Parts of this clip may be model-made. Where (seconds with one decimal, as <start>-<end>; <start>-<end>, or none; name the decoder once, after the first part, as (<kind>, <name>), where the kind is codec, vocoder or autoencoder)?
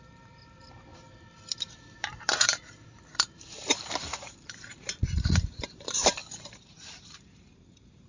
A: 0.0-8.1 (vocoder, BigVGAN v2)